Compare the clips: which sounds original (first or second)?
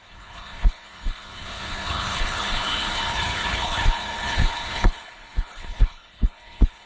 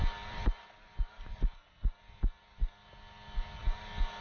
second